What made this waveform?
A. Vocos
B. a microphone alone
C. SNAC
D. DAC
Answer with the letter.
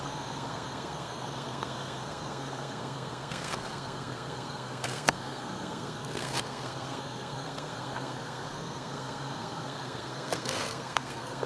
C